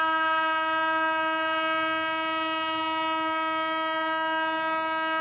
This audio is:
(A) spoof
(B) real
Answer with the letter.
B